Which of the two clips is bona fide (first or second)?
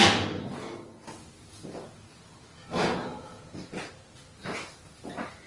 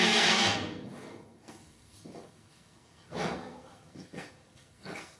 first